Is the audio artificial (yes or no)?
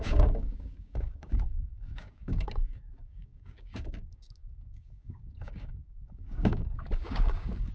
yes